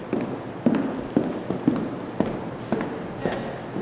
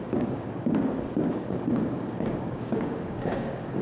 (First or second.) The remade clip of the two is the second